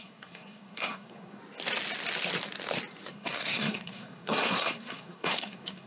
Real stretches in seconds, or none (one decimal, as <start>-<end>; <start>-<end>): 1.4-3.1